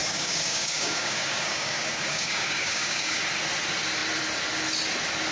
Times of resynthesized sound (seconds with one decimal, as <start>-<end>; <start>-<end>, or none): 0.0-3.2